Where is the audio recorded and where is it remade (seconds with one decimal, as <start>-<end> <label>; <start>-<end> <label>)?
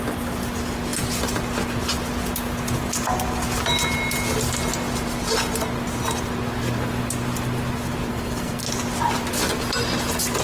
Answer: 0.0-8.1 recorded; 8.1-8.6 remade; 8.6-10.4 recorded